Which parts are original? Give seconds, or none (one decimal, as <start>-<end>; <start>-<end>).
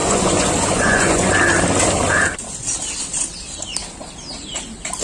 1.3-5.0